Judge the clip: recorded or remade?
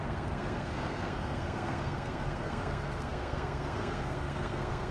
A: remade